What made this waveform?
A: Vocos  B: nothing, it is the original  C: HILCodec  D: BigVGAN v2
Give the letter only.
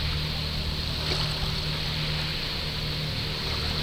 B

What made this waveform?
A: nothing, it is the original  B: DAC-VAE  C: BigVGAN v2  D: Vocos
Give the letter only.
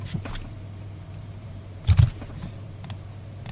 A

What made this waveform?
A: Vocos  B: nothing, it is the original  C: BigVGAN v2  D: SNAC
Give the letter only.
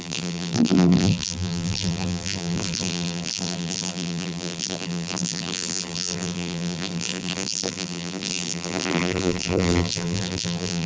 C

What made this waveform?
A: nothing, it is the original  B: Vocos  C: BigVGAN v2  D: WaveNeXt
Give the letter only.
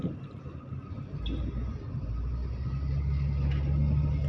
A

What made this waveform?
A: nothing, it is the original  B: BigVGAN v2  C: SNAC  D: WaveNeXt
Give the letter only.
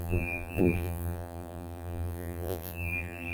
B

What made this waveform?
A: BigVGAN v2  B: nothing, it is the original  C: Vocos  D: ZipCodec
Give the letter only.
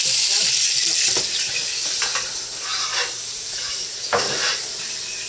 B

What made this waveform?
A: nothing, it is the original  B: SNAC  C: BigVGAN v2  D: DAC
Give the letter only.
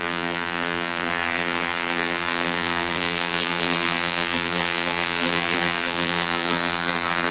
C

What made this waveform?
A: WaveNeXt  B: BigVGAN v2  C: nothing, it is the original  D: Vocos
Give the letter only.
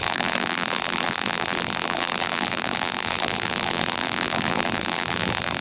B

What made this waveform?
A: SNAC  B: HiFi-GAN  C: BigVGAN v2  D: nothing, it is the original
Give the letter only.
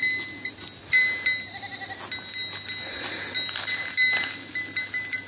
D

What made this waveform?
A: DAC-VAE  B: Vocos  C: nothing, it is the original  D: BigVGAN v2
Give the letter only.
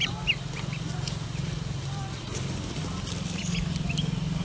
D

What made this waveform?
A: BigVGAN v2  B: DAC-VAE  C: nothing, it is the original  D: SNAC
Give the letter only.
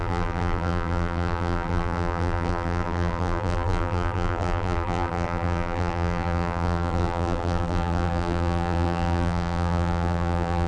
A